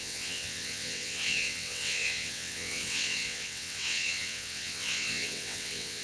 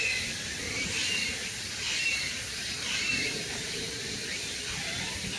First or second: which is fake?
first